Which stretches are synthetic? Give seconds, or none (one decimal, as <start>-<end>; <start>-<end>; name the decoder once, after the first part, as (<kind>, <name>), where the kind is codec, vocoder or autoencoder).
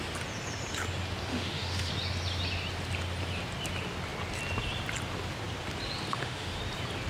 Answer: 1.3-1.9 (autoencoder, DAC-VAE); 6.1-6.6